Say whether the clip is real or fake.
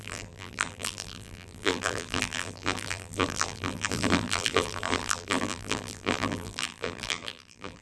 fake